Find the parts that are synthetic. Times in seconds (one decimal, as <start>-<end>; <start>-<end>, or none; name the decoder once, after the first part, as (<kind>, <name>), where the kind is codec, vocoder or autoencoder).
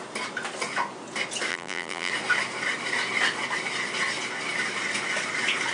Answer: 1.5-2.1 (vocoder, BigVGAN v2)